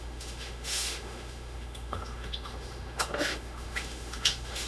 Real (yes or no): no